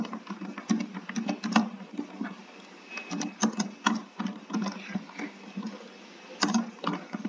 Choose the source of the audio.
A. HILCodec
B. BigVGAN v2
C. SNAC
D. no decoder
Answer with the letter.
D